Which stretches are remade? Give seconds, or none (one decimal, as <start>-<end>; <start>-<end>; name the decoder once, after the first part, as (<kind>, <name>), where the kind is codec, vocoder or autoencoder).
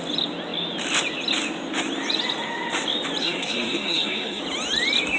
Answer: 3.2-4.4 (codec, SNAC)